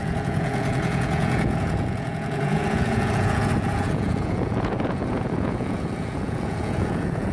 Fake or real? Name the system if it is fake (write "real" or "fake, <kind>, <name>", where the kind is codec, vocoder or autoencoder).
fake, vocoder, Vocos